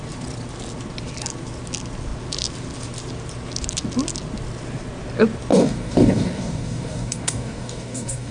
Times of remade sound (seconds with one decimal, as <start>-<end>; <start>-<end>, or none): 5.5-8.3